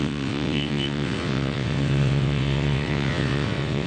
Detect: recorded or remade remade